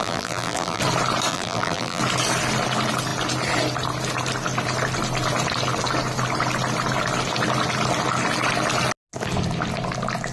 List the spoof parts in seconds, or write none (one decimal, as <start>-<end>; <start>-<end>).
0.0-0.8; 1.3-2.0